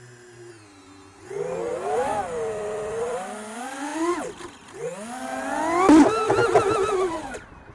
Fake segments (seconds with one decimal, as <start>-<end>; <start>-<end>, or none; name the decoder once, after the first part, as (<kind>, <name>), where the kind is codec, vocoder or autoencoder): none